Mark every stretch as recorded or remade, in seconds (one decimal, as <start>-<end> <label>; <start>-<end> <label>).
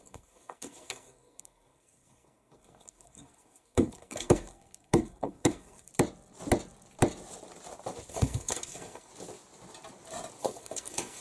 0.0-5.9 remade; 5.9-8.1 recorded; 8.1-9.1 remade; 9.1-10.4 recorded; 10.4-11.2 remade